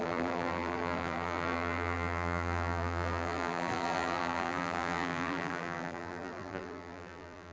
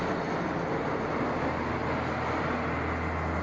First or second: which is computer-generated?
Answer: first